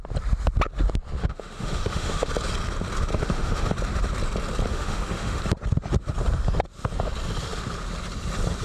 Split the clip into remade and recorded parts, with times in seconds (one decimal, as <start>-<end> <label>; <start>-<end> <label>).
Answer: 0.0-1.2 recorded; 1.2-2.3 remade; 2.3-3.1 recorded; 3.1-3.7 remade; 3.7-4.7 recorded; 4.7-5.4 remade; 5.4-8.6 recorded